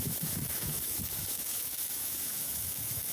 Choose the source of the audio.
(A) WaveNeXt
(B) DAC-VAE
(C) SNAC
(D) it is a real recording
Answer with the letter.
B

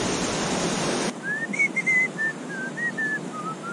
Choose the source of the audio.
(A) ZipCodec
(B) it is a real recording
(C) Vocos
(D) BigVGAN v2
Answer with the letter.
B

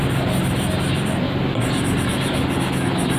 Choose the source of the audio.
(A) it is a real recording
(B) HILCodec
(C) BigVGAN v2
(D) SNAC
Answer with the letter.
A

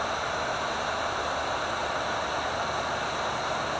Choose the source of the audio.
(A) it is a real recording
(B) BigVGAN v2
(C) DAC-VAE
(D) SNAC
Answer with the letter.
A